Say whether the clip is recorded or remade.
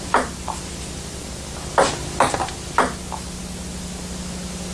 recorded